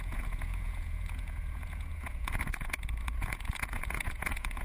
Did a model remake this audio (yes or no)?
yes